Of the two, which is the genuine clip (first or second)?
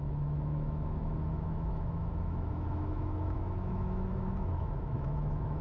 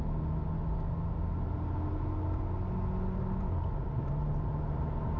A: second